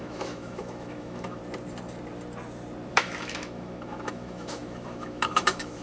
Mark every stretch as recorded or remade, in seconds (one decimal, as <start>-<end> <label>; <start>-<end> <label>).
0.0-1.4 remade; 1.4-2.9 recorded; 2.9-5.8 remade